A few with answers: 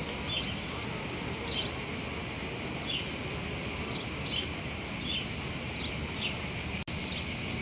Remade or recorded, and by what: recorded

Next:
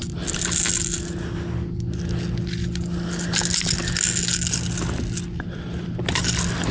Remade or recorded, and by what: recorded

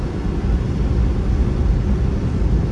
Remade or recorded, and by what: recorded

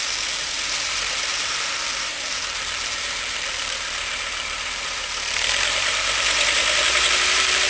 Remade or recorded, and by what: remade, vocoder, BigVGAN v2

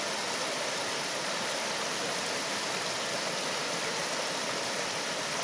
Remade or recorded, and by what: recorded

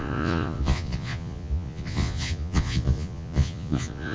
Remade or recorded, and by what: remade, vocoder, Vocos